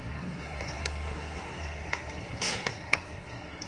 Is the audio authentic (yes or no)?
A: no